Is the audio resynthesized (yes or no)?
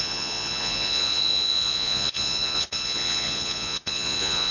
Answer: yes